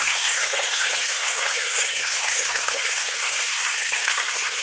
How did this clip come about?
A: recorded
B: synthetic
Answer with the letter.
B